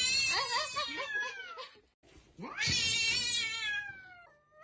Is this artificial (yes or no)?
no